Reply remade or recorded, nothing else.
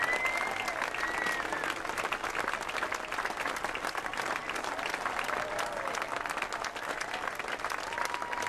recorded